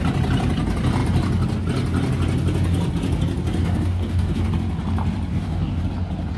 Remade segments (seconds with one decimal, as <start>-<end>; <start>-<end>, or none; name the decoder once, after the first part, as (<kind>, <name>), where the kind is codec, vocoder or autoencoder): 3.6-4.5 (codec, DAC); 5.3-5.8